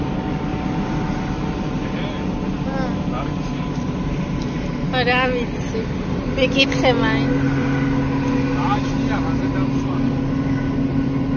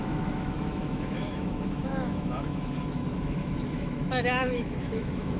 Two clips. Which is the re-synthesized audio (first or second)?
second